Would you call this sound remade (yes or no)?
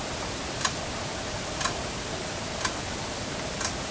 no